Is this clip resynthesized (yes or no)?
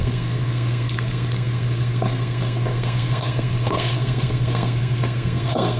yes